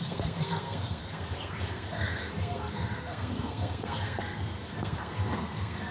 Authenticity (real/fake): fake